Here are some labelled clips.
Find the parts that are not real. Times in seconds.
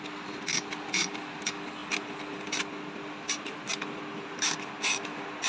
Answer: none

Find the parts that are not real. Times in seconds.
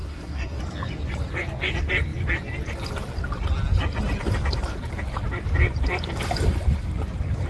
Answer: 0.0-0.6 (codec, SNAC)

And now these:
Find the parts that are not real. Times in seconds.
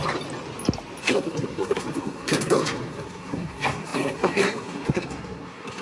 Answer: 1.0-5.8 (codec, SNAC)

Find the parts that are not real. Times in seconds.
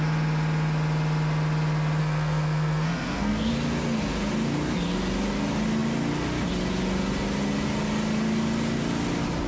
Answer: 2.0-3.5 (codec, SNAC)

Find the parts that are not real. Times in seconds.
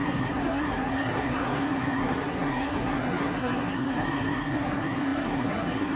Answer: 0.0-6.0 (codec, SNAC)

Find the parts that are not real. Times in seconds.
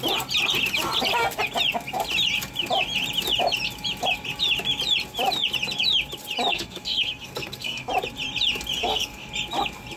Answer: 6.5-7.9 (codec, SNAC); 8.8-9.3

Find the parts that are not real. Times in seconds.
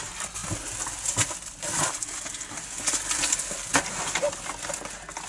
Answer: none